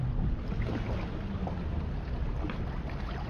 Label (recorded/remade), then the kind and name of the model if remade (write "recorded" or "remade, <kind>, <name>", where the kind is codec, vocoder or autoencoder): recorded